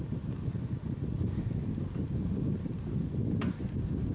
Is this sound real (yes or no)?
yes